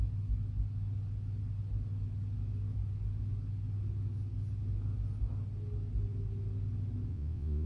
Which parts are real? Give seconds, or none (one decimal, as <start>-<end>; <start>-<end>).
0.0-7.1

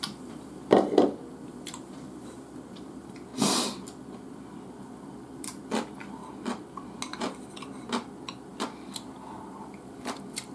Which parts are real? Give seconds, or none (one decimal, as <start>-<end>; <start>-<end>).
3.3-4.3; 6.2-7.5

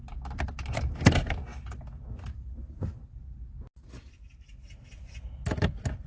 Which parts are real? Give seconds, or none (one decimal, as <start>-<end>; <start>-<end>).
0.0-6.1

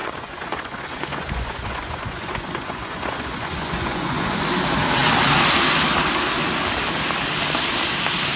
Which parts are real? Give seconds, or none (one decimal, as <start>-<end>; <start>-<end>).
4.4-8.4